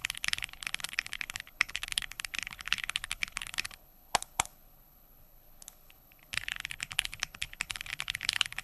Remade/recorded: remade